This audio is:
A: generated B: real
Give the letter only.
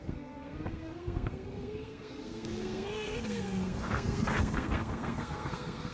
A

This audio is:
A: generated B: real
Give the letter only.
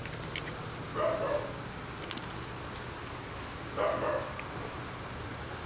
B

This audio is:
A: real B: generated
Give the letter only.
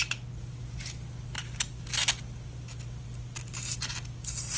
A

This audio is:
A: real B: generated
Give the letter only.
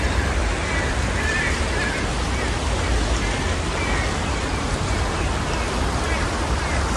A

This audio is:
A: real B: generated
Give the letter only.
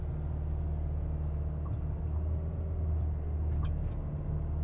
A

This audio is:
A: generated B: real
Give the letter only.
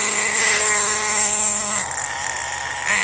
B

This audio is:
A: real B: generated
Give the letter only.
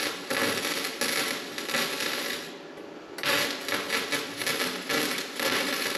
A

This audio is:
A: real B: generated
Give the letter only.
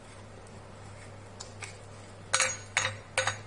A